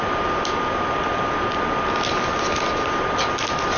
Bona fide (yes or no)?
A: yes